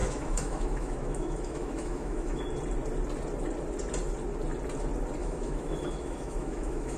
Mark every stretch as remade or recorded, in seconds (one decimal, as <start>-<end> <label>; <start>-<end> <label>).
0.0-2.4 remade; 2.4-5.2 recorded; 5.2-7.0 remade